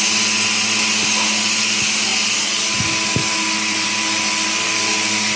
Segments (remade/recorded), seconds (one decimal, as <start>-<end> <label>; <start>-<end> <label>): 0.0-5.4 recorded